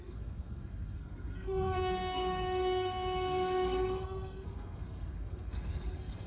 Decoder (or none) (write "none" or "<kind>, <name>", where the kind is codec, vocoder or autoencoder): codec, SNAC